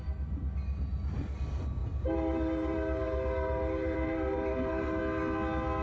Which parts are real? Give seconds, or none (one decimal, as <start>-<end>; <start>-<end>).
0.0-1.8; 5.0-5.8